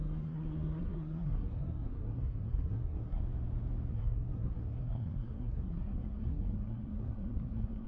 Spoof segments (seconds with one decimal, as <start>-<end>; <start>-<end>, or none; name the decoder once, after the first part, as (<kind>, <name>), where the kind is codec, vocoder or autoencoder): 0.0-3.2 (codec, SNAC); 3.9-7.9